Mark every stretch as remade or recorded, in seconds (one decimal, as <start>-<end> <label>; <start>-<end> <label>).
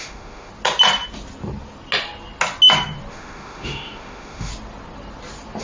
0.0-0.5 remade; 0.5-3.1 recorded; 3.1-4.5 remade; 4.5-5.6 recorded